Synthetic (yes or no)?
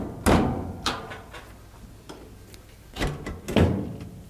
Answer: no